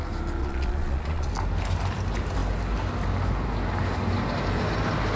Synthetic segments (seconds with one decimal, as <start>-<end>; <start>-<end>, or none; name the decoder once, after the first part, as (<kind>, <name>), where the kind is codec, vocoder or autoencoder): 0.4-1.3 (vocoder, Vocos)